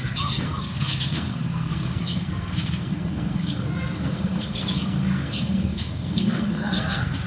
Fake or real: fake